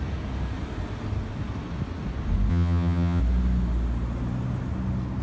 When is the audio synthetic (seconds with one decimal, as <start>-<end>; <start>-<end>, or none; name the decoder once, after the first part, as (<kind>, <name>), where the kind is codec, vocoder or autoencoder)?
2.5-3.2 (vocoder, HiFi-GAN)